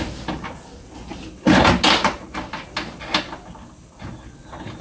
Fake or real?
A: real